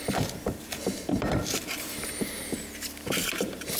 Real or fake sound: fake